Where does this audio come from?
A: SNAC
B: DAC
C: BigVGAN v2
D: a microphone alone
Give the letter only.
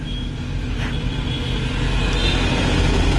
D